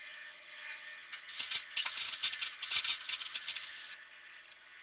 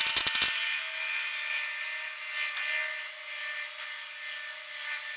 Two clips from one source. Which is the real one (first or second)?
second